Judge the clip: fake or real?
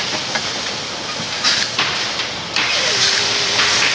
real